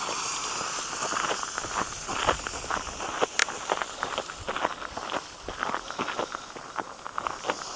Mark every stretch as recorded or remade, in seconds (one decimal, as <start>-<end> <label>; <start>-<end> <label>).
0.0-7.8 recorded